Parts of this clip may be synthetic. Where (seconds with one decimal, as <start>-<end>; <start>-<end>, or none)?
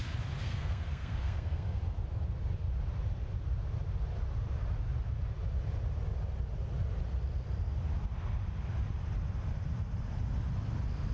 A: 0.4-1.8